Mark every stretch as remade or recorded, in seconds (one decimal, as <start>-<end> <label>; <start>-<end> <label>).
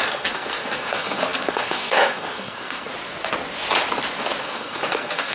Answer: 0.0-2.9 remade; 2.9-4.4 recorded; 4.4-5.3 remade